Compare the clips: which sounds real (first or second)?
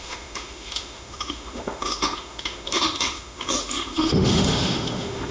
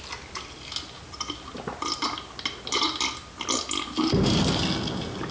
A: second